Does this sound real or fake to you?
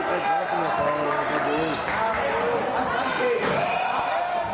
real